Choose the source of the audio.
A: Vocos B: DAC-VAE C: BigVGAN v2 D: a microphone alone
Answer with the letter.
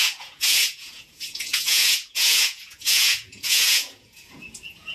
A